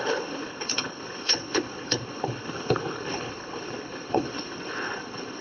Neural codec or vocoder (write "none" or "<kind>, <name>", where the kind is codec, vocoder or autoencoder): codec, HILCodec